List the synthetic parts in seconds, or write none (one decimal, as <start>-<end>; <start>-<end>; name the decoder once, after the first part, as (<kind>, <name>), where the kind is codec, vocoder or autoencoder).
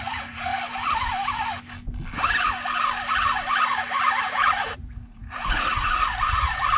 0.0-0.5 (vocoder, Vocos); 4.2-6.8